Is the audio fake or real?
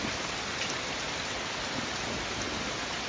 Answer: real